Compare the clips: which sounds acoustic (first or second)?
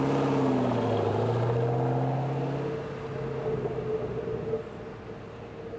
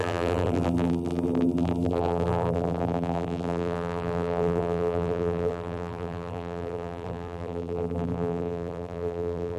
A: first